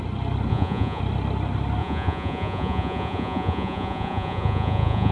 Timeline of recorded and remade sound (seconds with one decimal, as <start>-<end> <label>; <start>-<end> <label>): 0.0-0.5 recorded; 0.5-1.0 remade; 1.0-1.8 recorded; 1.8-5.1 remade